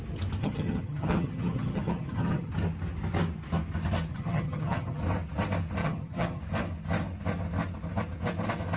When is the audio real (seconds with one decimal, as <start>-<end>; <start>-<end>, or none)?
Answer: 0.0-0.4; 2.5-4.1; 5.0-5.8; 6.4-8.8